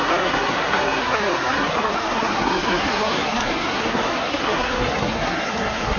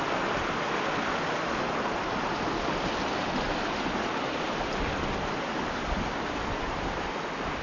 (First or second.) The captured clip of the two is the second